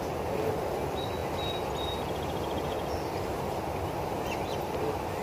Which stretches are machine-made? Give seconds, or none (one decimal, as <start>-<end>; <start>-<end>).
none

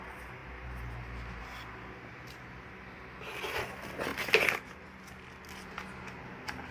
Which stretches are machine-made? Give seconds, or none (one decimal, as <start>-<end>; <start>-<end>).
none

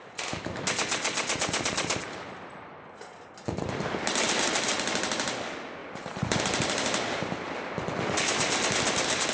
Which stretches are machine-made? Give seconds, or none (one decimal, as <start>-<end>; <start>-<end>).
none

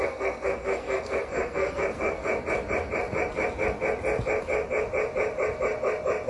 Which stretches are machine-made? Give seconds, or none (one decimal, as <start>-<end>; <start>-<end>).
0.0-2.2

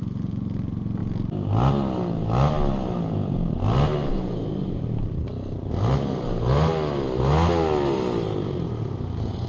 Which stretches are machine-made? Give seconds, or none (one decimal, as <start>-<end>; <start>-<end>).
none